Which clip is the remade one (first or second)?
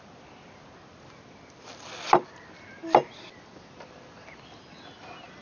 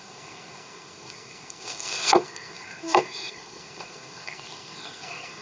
second